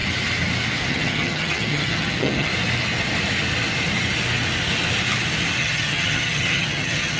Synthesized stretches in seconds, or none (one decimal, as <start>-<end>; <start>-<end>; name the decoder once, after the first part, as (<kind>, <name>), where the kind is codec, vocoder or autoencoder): 0.9-2.5 (vocoder, HiFi-GAN); 5.6-7.2